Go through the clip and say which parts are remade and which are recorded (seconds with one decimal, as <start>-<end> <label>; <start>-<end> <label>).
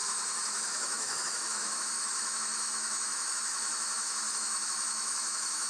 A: 0.0-5.7 remade